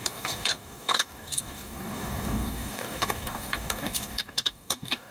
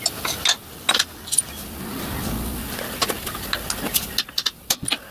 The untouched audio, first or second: second